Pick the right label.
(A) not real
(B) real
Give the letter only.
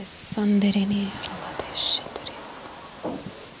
B